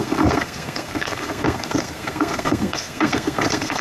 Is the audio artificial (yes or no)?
yes